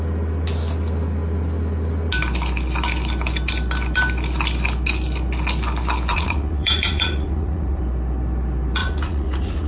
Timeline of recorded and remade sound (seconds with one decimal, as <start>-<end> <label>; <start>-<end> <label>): 0.0-6.1 recorded; 6.1-7.8 remade; 7.8-8.8 recorded; 8.8-9.7 remade